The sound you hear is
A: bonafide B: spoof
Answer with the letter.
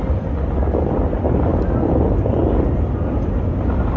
A